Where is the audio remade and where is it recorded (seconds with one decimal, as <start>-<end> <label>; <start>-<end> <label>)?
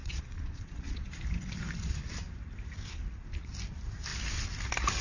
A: 0.0-1.0 remade; 1.0-5.0 recorded